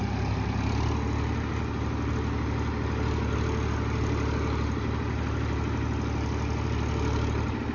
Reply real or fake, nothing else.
real